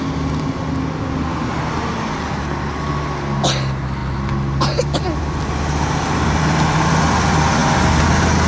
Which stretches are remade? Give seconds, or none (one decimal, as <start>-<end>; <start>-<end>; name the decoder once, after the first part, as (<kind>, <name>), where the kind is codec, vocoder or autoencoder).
none